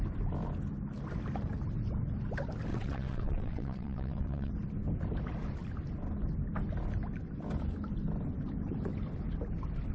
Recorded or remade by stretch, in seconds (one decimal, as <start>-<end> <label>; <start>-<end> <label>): 0.0-2.7 recorded; 2.7-4.5 remade; 4.5-9.9 recorded